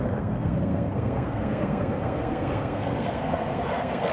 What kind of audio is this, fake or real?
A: fake